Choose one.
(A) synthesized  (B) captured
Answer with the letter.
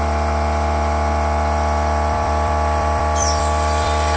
A